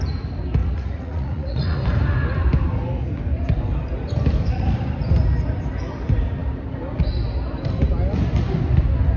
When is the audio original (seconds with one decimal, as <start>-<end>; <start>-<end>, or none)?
0.0-0.6; 1.8-9.2